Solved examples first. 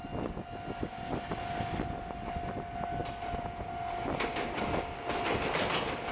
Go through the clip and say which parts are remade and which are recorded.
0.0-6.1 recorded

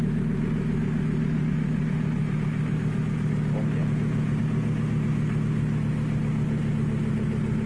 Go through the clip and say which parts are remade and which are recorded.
0.0-3.8 recorded; 3.8-4.4 remade; 4.4-7.7 recorded

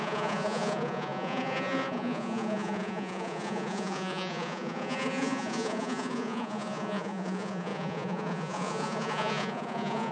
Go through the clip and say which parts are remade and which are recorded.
0.0-10.1 remade

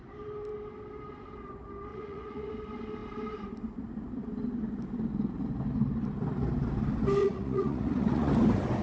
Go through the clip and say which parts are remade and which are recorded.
0.0-1.9 recorded; 1.9-2.5 remade; 2.5-7.2 recorded; 7.2-8.3 remade; 8.3-8.8 recorded